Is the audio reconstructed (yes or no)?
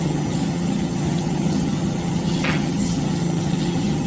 yes